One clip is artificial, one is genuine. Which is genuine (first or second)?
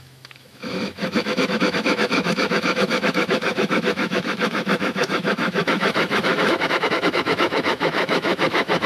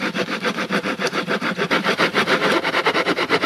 second